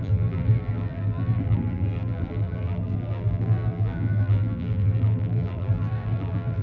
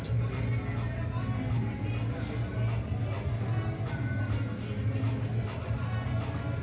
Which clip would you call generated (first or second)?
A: first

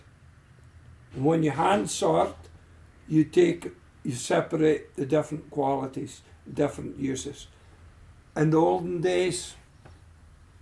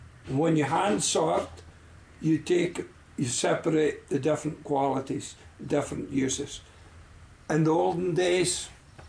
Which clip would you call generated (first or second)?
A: second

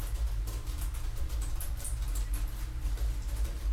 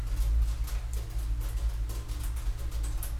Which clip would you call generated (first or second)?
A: first